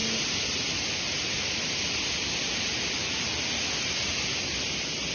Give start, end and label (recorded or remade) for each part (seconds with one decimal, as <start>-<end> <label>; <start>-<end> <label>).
0.0-5.1 recorded